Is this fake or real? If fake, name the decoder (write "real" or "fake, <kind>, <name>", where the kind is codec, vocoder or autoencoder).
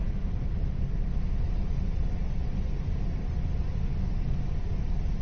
real